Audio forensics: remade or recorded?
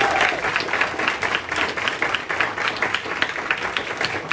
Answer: recorded